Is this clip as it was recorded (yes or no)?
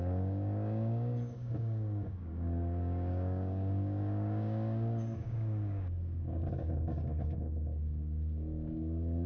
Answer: no